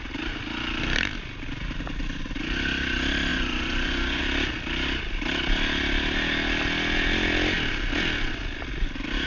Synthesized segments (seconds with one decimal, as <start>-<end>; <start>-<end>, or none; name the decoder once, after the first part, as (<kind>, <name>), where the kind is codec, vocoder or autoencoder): 3.3-4.2 (vocoder, Vocos)